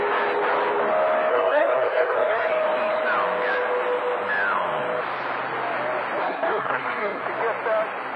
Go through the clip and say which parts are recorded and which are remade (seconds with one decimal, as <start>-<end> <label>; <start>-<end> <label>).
0.0-1.3 recorded; 1.3-2.5 remade; 2.5-6.2 recorded; 6.2-7.2 remade; 7.2-8.2 recorded